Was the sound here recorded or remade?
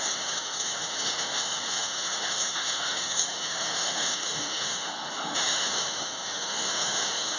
remade